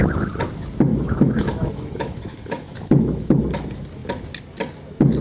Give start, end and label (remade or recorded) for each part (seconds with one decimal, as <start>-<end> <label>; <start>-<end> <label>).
0.0-0.9 recorded; 0.9-3.4 remade; 3.4-5.2 recorded